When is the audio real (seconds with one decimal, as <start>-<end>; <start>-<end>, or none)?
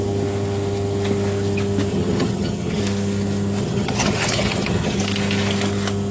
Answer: 0.0-1.9; 2.8-3.6; 5.0-6.1